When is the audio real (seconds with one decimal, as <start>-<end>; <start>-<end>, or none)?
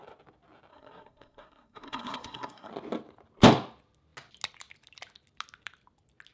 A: 0.0-0.7; 2.7-6.3